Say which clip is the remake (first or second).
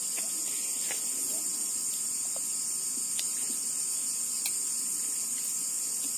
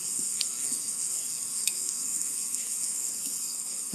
second